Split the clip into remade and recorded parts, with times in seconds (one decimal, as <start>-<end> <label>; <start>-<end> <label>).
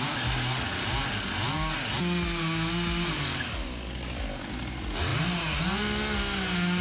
0.0-6.8 recorded